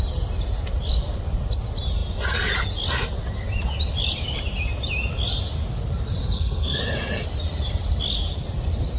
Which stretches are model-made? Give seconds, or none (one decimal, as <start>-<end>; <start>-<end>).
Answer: 6.2-6.8